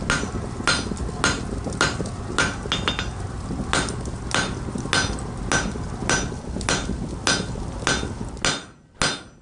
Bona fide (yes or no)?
yes